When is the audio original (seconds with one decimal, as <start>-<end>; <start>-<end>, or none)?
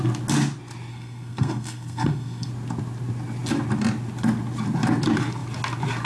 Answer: 0.0-0.9; 2.5-6.1